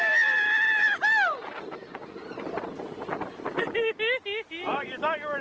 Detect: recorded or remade recorded